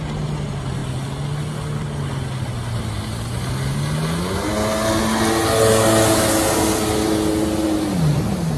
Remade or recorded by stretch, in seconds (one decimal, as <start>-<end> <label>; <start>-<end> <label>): 0.0-8.6 recorded